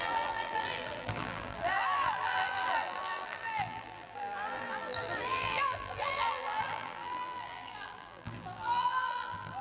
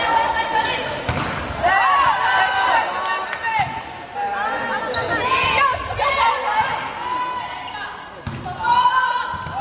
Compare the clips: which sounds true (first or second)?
second